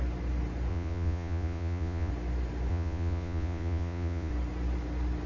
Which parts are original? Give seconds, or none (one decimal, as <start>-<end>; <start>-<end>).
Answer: 0.0-0.7; 2.1-2.7; 4.3-5.3